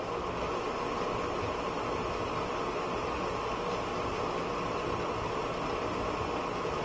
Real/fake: real